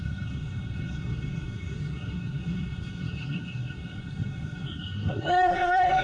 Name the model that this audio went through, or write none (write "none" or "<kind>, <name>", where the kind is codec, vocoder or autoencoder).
codec, SNAC